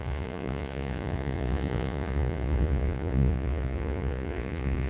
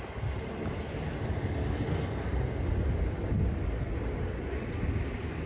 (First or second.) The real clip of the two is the second